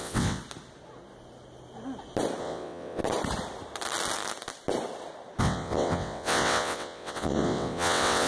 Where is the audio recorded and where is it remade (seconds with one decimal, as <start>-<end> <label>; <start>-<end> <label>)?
0.0-0.4 remade; 0.4-2.4 recorded; 2.4-3.0 remade; 3.0-5.4 recorded; 5.4-8.3 remade